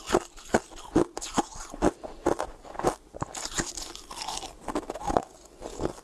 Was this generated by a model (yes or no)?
no